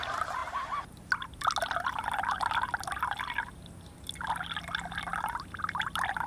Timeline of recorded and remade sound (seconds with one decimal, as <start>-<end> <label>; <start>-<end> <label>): 0.0-6.3 recorded